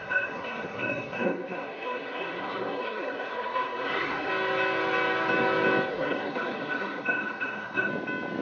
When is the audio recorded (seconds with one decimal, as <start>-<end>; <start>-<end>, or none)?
4.3-5.9; 7.9-8.4